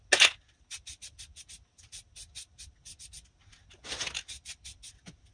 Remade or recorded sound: recorded